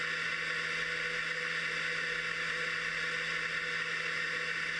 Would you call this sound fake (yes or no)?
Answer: no